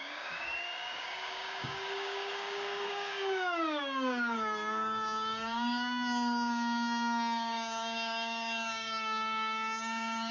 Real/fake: fake